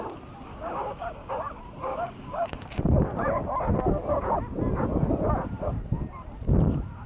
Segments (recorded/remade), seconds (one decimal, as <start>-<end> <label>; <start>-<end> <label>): 0.0-0.5 recorded; 0.5-1.3 remade; 1.3-1.9 recorded; 1.9-2.8 remade; 2.8-7.1 recorded